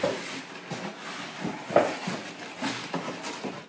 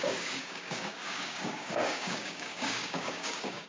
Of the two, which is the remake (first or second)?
second